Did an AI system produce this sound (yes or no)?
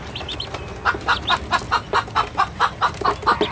no